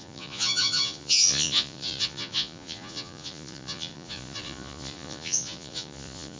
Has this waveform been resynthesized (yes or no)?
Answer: yes